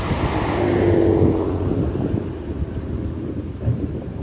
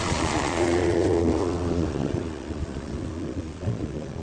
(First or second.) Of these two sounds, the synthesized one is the second